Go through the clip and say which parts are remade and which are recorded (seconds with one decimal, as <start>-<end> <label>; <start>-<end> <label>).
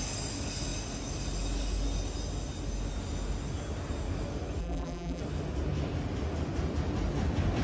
0.0-4.6 recorded; 4.6-5.2 remade; 5.2-7.6 recorded